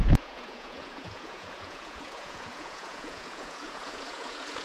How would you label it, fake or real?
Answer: fake